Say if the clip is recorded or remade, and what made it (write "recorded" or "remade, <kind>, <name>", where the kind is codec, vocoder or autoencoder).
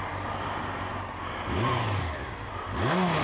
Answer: recorded